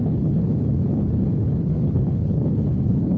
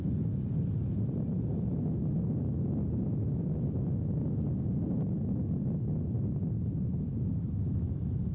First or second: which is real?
second